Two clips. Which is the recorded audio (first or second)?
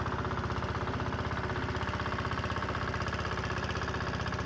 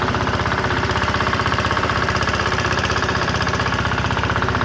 first